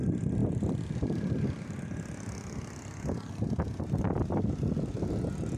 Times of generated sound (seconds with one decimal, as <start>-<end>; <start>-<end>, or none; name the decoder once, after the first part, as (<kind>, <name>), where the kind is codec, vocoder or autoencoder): none